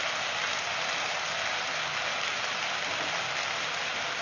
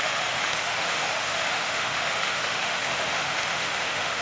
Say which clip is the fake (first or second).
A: second